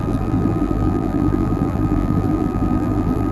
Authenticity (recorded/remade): remade